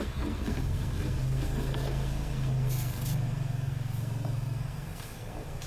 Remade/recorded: remade